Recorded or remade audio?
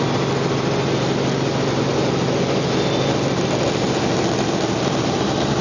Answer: recorded